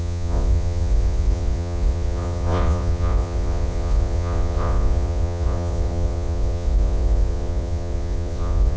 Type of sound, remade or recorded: remade